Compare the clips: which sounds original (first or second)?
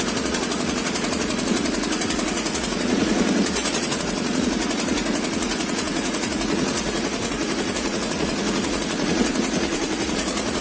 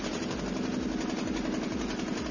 second